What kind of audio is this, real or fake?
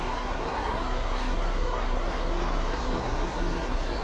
fake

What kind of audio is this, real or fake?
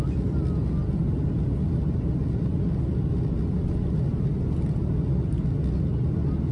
real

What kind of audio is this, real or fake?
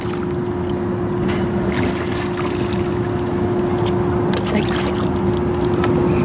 real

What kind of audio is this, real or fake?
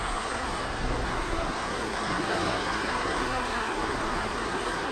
fake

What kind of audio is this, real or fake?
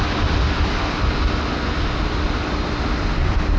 real